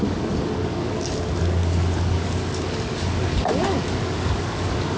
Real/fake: fake